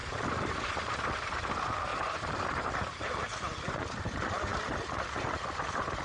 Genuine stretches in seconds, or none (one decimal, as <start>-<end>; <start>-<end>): 1.5-1.9; 4.0-6.0